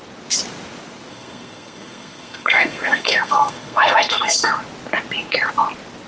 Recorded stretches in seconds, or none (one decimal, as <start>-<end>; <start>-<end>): 0.0-1.1; 4.5-6.1